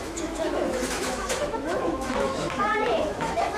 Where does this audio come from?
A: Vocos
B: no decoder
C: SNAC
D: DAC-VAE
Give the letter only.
D